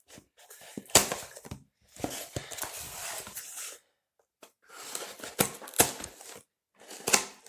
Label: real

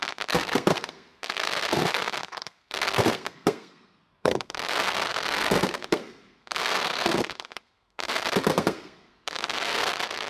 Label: fake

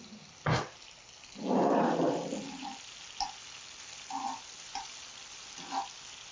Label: real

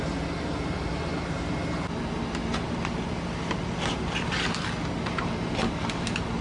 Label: real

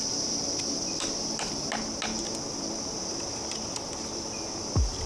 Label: real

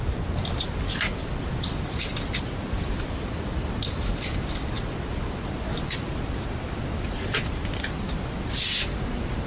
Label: real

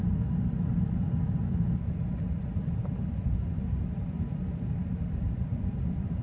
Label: real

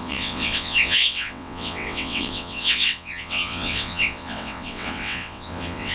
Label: fake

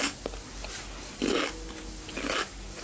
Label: real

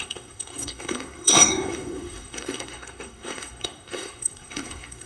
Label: fake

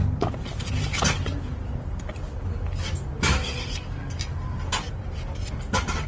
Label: real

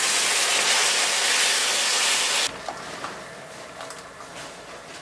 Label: real